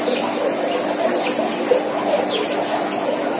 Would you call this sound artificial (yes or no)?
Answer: no